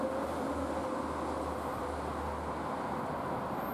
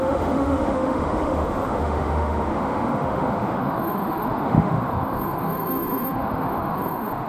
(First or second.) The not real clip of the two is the second